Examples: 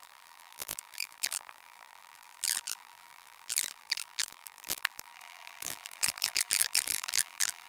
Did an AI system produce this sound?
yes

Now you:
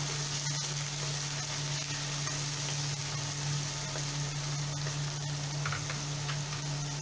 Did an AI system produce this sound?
no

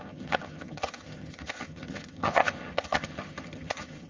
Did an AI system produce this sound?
yes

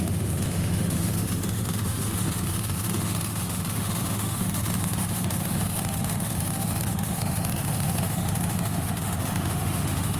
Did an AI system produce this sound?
yes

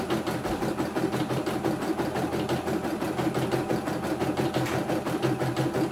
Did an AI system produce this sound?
no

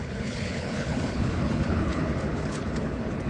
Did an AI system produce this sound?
yes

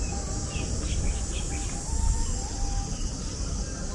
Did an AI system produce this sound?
no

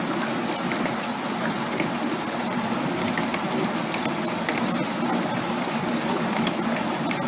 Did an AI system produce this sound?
no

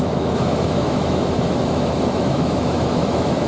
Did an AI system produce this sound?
yes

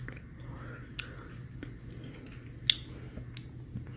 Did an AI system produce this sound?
no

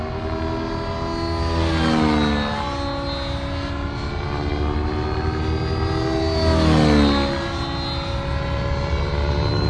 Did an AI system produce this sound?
no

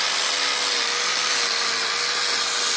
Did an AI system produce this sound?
no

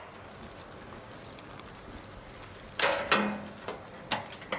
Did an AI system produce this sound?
no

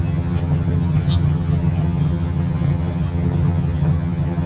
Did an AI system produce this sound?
yes